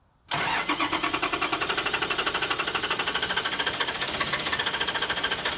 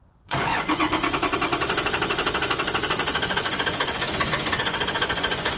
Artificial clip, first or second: second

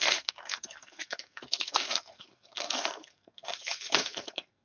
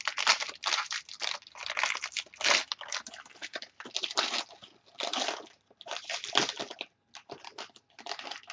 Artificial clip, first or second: first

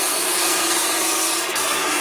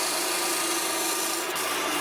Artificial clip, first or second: first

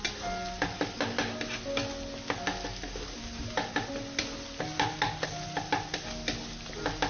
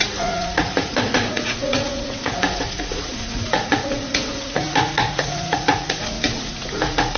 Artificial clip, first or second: second